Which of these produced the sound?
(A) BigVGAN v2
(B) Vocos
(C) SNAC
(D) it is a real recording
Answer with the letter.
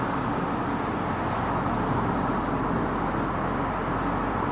D